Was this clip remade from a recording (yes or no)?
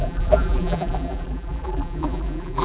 yes